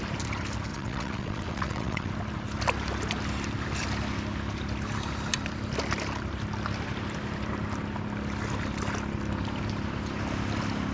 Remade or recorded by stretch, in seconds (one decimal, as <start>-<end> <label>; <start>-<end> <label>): 0.0-0.7 recorded; 0.7-2.1 remade; 2.1-10.9 recorded